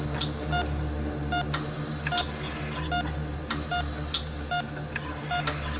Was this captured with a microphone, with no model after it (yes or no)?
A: yes